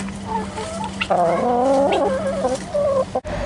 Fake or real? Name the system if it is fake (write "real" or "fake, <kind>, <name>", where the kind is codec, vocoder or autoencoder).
real